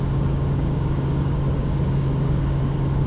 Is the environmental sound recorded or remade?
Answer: remade